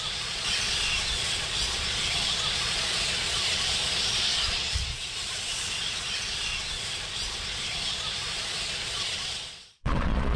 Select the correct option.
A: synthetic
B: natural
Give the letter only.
A